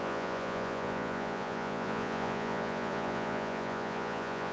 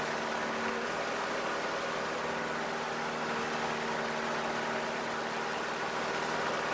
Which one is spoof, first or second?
first